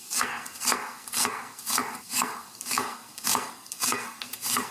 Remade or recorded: remade